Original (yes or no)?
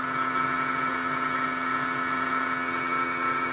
no